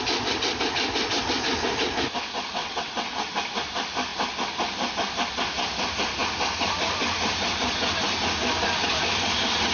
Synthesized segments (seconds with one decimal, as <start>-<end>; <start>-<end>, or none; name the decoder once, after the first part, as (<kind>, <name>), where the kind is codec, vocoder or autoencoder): 2.6-3.3 (vocoder, WaveNeXt)